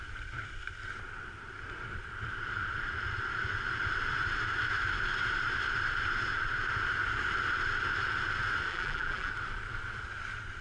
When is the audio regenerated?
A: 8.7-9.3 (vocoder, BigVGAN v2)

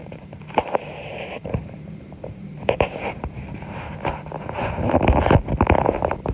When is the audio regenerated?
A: 0.0-3.7 (vocoder, BigVGAN v2)

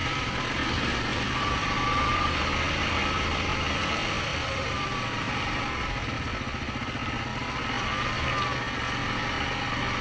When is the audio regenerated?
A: 0.0-2.4 (vocoder, BigVGAN v2); 4.3-5.5